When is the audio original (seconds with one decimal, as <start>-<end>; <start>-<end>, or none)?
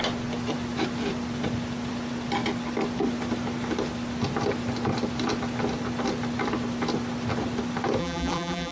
0.0-8.0